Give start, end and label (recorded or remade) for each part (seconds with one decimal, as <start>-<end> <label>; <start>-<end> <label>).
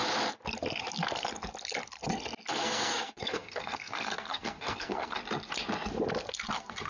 0.0-2.5 recorded; 2.5-5.2 remade; 5.2-6.5 recorded; 6.5-6.9 remade